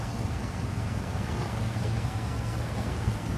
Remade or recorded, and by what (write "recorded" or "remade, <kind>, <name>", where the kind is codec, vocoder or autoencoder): remade, codec, SNAC